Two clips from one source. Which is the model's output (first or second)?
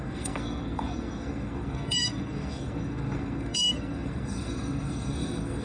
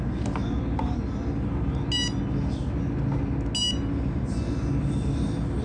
first